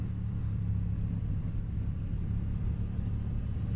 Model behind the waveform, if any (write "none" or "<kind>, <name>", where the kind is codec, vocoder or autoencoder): vocoder, BigVGAN v2